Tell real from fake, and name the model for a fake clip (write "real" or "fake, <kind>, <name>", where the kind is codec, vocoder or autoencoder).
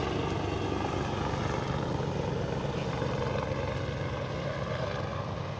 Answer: real